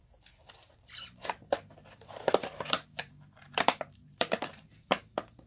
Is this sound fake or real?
fake